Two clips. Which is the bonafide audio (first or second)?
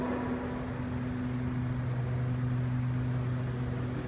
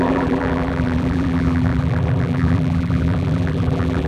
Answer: first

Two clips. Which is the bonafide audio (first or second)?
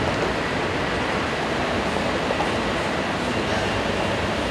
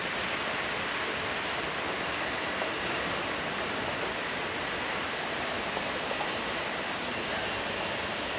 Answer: first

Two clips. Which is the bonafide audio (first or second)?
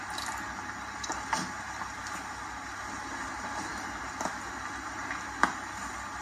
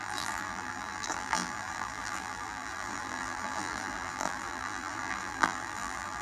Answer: first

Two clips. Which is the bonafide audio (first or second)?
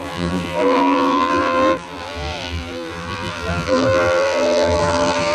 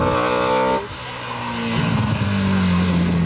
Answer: second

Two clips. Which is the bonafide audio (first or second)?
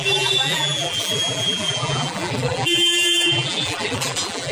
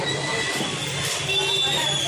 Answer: second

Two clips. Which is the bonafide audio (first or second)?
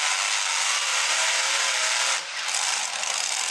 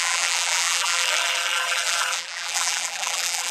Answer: first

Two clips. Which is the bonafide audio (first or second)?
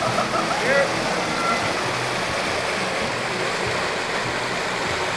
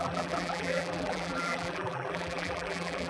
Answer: first